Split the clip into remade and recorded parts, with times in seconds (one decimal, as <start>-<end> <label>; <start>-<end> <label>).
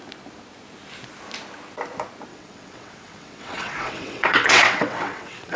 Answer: 0.0-2.3 recorded; 2.3-5.6 remade